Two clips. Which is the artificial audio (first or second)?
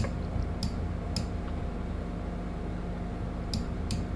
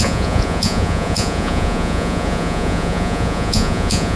second